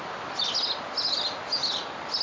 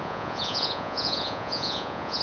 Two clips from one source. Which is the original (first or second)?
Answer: first